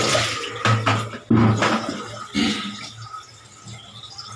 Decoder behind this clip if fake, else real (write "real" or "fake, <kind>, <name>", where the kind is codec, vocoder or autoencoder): real